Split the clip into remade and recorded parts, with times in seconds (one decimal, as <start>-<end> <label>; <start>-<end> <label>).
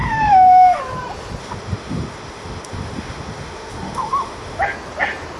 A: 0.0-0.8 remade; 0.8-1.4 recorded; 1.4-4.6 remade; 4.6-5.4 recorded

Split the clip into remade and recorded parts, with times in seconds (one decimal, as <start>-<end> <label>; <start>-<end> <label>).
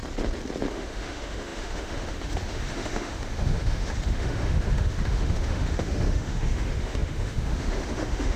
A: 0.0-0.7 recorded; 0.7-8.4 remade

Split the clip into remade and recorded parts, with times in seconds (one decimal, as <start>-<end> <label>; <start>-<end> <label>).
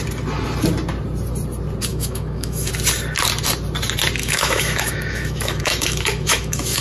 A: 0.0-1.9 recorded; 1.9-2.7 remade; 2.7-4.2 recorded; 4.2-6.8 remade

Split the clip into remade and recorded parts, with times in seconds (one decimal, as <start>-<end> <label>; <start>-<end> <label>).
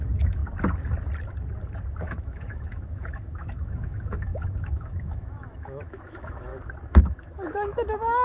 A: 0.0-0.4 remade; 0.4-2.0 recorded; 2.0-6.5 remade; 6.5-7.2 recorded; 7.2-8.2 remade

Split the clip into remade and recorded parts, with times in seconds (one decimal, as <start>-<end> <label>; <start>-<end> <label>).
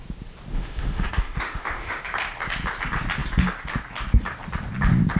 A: 0.0-0.5 recorded; 0.5-2.0 remade; 2.0-5.2 recorded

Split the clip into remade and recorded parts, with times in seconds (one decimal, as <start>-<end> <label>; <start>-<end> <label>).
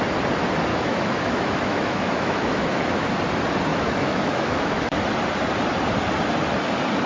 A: 0.0-0.7 recorded; 0.7-3.1 remade; 3.1-3.7 recorded; 3.7-4.8 remade; 4.8-7.1 recorded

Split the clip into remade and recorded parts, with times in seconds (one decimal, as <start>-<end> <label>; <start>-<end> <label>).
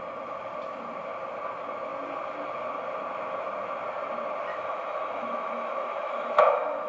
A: 0.0-4.5 recorded; 4.5-6.9 remade